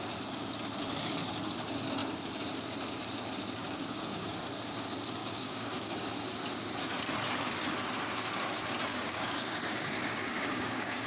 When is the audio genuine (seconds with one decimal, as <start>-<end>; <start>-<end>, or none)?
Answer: 0.0-3.6; 4.3-5.2; 6.1-8.9